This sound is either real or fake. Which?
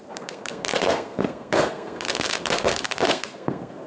fake